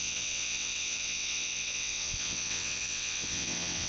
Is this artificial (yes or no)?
yes